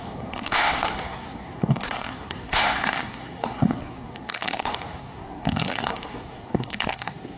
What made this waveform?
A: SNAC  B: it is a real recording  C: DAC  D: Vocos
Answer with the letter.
A